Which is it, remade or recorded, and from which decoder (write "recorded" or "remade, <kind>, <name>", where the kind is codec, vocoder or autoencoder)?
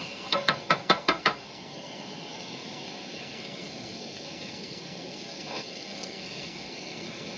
remade, codec, SNAC